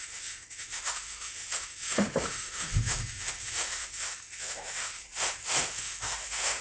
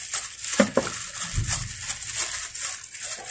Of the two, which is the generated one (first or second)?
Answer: first